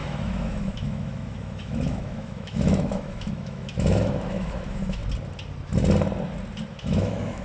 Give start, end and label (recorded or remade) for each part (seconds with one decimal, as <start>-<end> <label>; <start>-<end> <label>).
0.0-5.0 remade; 5.0-6.8 recorded; 6.8-7.4 remade